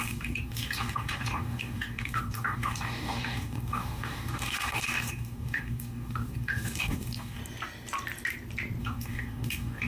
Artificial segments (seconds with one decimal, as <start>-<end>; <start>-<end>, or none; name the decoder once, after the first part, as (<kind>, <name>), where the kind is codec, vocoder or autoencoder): 0.0-7.4 (codec, DAC); 8.8-9.9